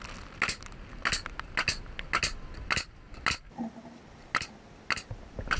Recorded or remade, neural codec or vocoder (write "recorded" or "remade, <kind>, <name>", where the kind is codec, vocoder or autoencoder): recorded